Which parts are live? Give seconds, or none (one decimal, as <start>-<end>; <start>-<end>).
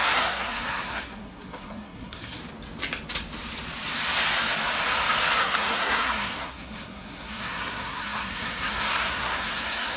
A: 2.4-5.4